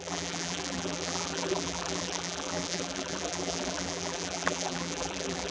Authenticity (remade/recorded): remade